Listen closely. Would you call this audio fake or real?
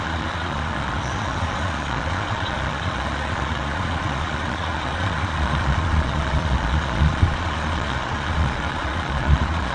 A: fake